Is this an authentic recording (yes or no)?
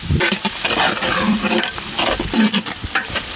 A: yes